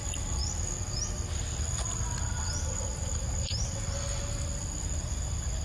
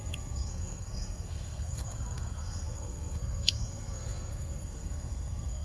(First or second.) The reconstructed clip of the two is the second